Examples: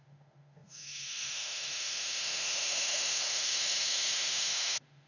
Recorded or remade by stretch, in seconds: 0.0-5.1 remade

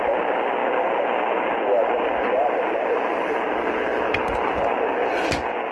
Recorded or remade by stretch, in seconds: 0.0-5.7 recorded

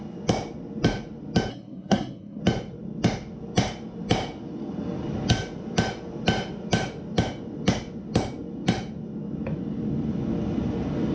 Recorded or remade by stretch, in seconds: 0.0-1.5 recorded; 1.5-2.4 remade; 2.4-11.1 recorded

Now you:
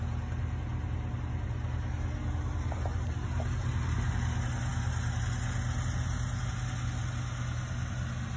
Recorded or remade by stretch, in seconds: 0.0-8.4 recorded